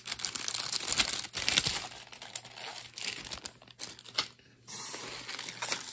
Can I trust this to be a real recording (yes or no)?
yes